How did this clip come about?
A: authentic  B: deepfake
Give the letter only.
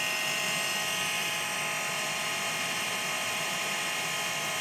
A